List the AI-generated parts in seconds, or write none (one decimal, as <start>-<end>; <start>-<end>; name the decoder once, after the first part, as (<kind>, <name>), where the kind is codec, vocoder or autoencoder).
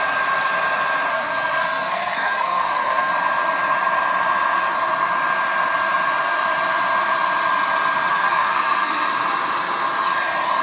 1.1-3.1 (codec, SNAC); 8.1-9.1